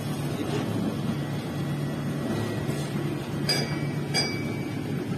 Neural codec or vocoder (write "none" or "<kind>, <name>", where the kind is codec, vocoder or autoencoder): none